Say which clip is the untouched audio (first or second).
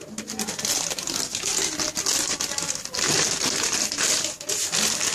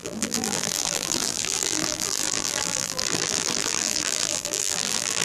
first